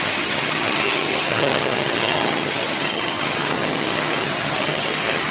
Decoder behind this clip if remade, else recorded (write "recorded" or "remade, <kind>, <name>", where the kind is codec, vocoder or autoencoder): remade, vocoder, HiFi-GAN